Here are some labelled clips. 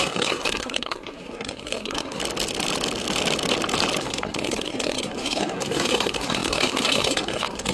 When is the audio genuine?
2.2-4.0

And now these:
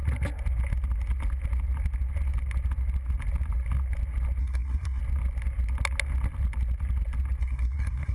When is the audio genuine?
0.0-4.4; 5.0-7.4

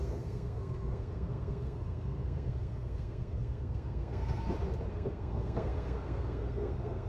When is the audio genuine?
4.4-4.9

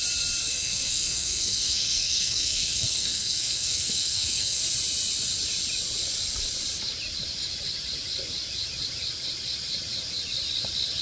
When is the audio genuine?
0.0-0.4; 4.6-11.0

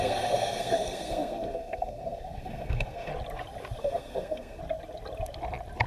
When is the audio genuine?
3.1-3.8; 4.6-5.9

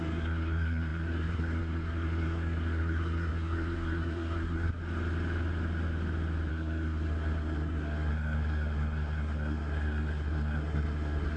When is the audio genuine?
4.8-6.5

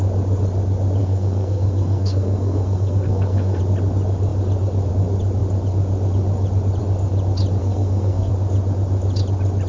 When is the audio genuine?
0.0-1.0; 3.6-7.6; 8.3-9.7